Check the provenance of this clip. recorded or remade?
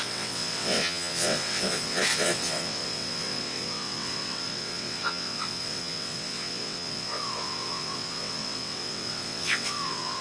remade